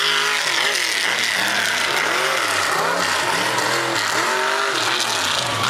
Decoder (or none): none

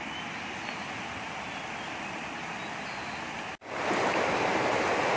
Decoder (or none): none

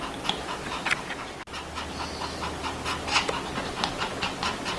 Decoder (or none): none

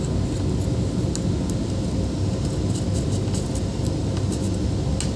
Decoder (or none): none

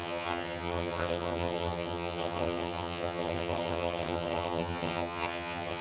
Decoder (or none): vocoder, HiFi-GAN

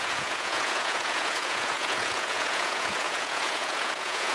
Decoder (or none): vocoder, Vocos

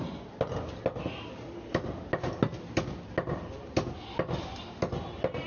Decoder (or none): none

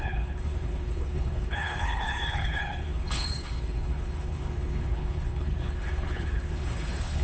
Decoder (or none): codec, HILCodec